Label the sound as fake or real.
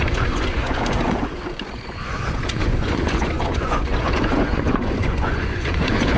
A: fake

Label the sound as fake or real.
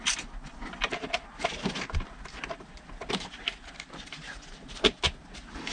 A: real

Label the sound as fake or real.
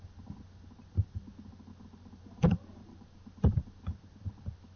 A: real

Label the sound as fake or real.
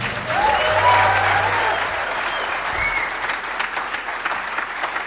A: real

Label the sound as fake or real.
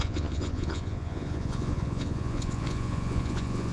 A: fake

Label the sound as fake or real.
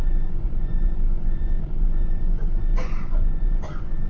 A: fake